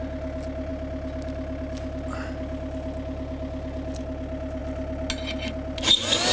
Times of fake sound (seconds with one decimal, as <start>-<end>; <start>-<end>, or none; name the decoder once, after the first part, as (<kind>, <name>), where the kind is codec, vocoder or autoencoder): none